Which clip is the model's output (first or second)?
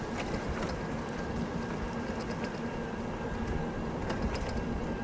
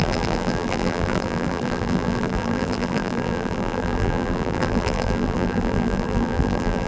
second